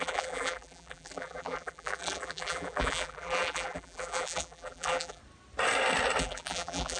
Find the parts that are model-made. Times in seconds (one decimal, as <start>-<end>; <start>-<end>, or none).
0.0-5.2; 6.2-7.0